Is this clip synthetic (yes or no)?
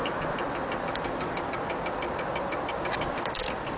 yes